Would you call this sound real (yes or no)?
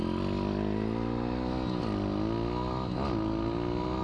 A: yes